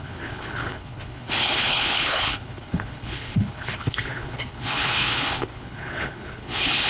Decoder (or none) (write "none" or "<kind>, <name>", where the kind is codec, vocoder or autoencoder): codec, HILCodec